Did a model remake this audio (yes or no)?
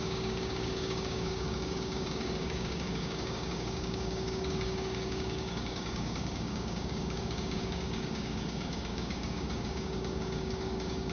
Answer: yes